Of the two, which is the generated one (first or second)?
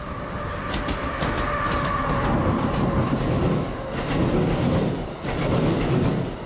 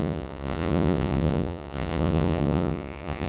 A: second